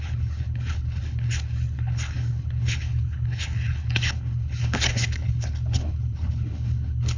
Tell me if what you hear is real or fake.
fake